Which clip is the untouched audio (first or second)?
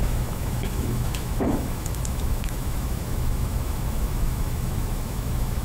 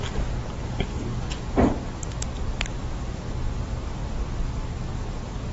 second